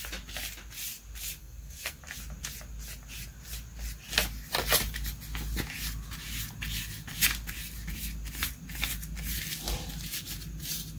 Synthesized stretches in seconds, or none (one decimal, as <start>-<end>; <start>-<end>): 1.4-2.0